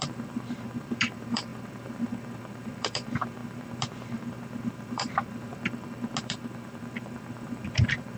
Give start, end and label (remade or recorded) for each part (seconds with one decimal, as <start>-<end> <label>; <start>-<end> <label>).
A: 0.0-5.5 remade; 5.5-6.2 recorded; 6.2-8.2 remade